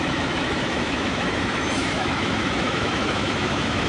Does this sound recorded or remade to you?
remade